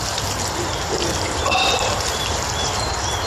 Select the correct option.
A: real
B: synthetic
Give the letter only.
B